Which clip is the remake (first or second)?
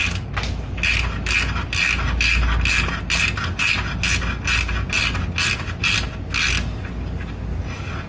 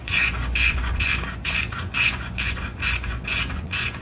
second